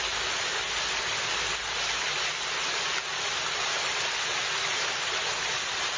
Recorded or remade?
recorded